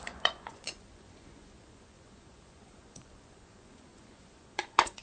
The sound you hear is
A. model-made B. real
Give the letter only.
A